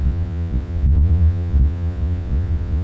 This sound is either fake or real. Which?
fake